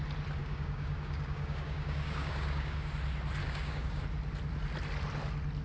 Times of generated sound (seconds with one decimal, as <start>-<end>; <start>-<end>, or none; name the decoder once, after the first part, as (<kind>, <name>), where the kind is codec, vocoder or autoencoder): 0.4-2.9 (codec, DAC); 3.4-4.0